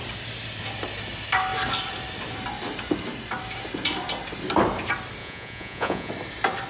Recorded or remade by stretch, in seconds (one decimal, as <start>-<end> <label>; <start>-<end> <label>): 0.0-5.2 recorded; 5.2-6.1 remade; 6.1-6.7 recorded